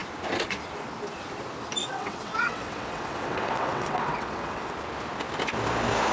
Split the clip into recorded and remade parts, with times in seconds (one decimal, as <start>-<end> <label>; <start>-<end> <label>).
0.0-1.8 recorded; 1.8-4.7 remade; 4.7-6.1 recorded